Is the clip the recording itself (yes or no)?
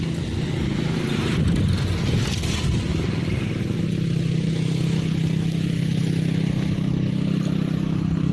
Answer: yes